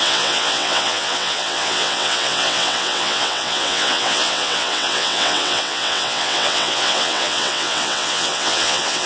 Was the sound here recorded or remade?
remade